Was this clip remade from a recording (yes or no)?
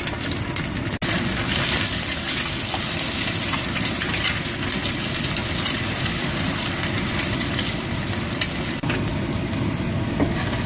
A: no